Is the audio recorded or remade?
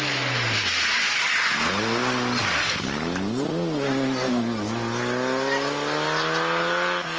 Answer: recorded